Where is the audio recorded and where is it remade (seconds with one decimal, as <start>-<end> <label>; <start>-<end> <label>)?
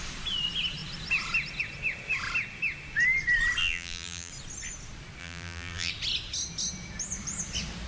0.0-3.6 recorded; 3.6-4.3 remade; 4.3-5.2 recorded; 5.2-5.9 remade; 5.9-7.9 recorded